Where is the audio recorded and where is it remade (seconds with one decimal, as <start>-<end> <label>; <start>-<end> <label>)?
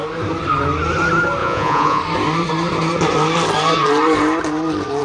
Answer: 0.0-1.4 recorded; 1.4-2.0 remade; 2.0-5.0 recorded